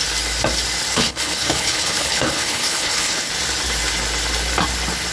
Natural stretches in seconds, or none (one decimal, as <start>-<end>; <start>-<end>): 0.0-0.9; 3.3-5.1